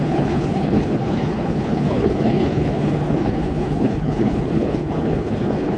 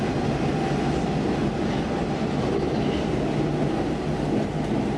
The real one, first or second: second